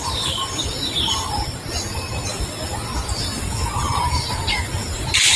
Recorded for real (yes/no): yes